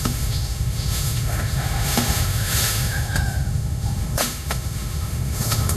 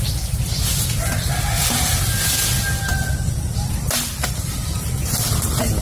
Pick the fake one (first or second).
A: first